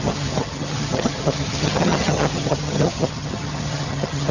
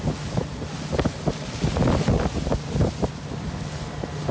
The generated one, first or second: first